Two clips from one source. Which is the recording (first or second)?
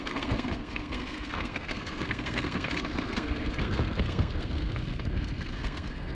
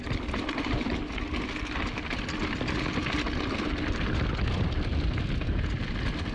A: second